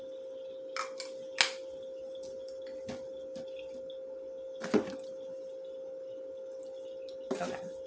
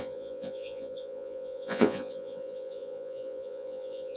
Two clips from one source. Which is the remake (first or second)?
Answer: second